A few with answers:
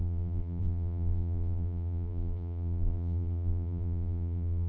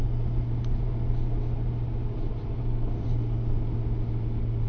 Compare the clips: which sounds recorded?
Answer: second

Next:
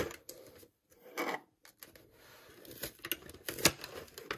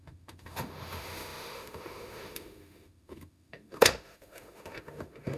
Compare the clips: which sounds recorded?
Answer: first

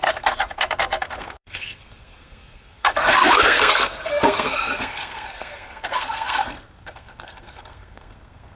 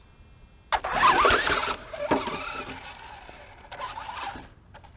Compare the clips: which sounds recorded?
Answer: second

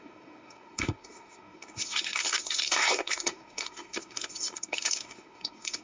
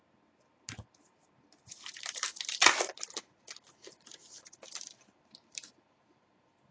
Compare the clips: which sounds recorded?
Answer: second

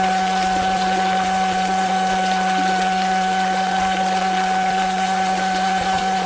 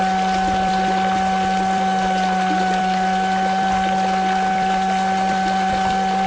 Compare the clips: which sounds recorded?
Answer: second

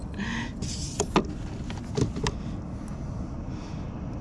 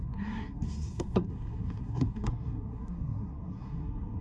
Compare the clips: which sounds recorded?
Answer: first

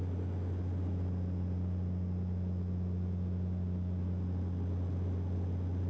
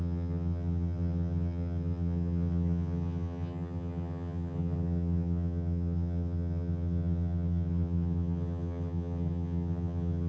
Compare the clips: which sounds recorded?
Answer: first